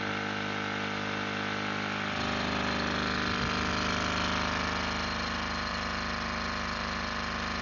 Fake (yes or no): no